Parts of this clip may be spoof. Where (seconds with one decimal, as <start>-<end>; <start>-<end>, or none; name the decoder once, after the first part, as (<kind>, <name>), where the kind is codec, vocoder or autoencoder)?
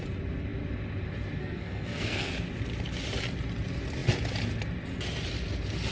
1.4-2.3 (codec, SNAC)